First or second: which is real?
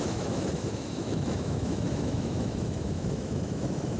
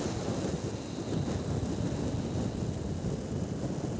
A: second